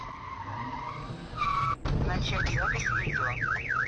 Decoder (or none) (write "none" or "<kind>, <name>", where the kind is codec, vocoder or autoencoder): none